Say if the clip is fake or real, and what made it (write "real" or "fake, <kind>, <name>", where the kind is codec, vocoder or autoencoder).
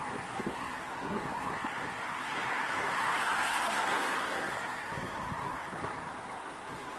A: fake, codec, SNAC